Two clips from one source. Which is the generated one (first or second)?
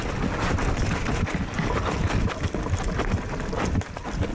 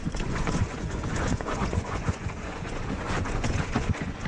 second